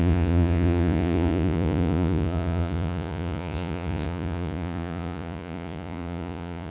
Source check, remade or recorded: remade